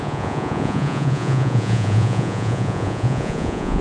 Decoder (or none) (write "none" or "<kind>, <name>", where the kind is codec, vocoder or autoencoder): vocoder, Vocos